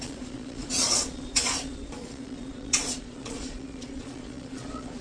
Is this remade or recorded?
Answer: remade